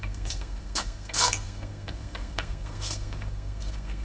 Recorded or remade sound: remade